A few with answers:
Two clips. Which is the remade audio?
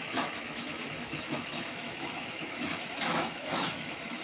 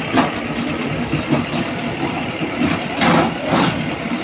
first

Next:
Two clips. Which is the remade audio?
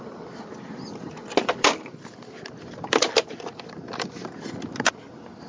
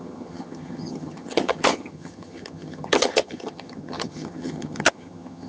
second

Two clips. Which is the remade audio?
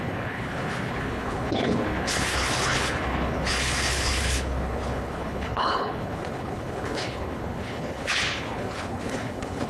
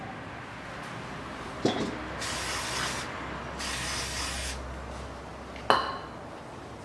first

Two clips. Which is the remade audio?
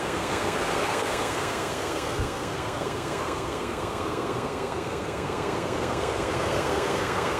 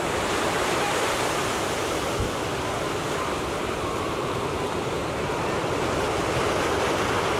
first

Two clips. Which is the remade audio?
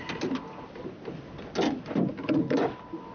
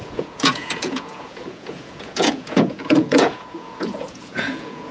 second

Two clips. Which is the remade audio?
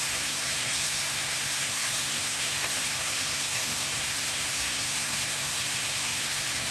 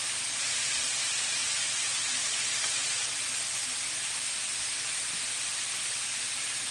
first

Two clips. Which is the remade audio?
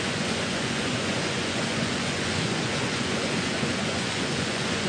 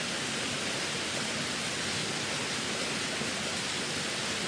first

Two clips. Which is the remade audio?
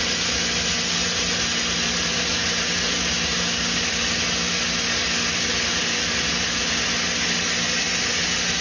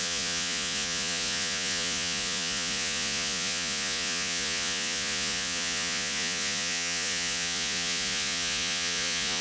second